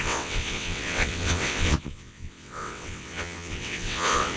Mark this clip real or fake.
fake